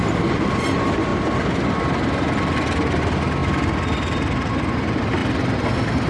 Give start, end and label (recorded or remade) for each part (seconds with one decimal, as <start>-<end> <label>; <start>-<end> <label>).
0.0-6.1 recorded